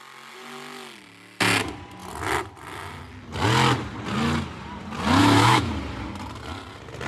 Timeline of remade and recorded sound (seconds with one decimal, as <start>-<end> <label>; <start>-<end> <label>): 0.0-5.2 recorded; 5.2-5.7 remade; 5.7-7.1 recorded